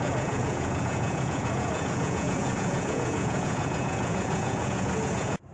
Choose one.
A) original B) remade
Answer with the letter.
B